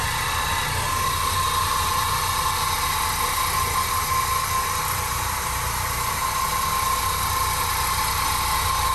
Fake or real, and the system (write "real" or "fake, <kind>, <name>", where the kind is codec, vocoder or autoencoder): real